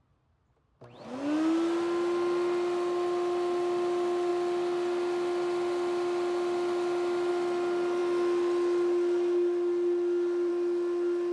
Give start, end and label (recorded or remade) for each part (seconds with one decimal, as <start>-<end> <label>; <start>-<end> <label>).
0.0-11.3 recorded